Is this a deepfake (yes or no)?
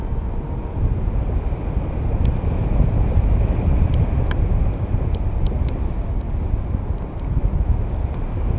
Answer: no